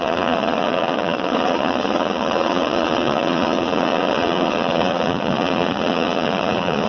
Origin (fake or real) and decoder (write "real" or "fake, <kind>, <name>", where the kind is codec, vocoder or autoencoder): fake, vocoder, Vocos